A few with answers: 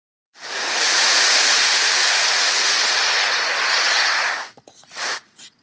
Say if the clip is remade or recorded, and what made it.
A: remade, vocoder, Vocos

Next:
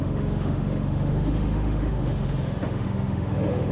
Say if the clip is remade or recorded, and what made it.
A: remade, autoencoder, DAC-VAE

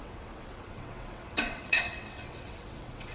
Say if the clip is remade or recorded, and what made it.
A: remade, vocoder, WaveNeXt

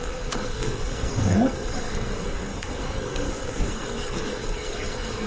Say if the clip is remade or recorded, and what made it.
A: remade, codec, SNAC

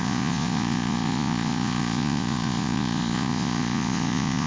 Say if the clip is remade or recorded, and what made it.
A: remade, vocoder, Vocos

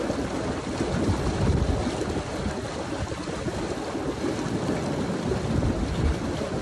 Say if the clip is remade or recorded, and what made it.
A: recorded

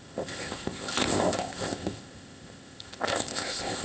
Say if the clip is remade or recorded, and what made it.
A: remade, codec, ZipCodec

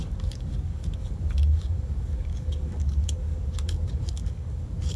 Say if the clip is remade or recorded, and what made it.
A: remade, codec, DAC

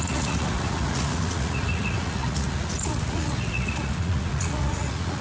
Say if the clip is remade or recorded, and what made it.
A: remade, vocoder, Vocos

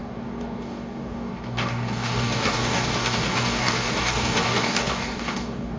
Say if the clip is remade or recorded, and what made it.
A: remade, codec, DAC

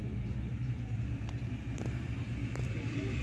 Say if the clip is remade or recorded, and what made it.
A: remade, vocoder, BigVGAN v2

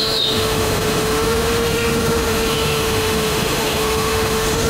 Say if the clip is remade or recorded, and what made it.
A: remade, autoencoder, DAC-VAE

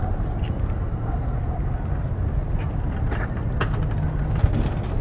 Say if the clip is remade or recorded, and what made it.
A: recorded